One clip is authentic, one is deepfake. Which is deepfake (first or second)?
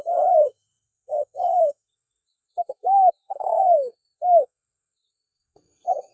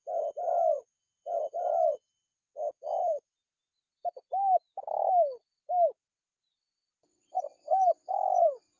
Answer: first